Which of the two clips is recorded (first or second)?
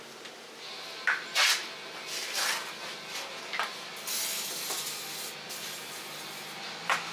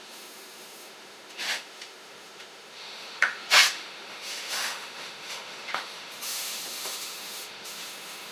first